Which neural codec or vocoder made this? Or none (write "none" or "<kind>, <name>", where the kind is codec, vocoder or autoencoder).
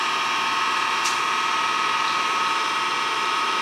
vocoder, BigVGAN v2